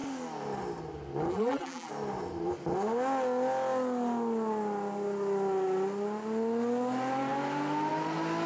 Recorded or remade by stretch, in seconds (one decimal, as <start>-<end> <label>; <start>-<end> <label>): 0.0-1.3 recorded; 1.3-1.9 remade; 1.9-8.5 recorded